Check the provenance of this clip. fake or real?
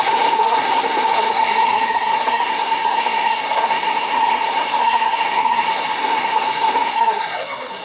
fake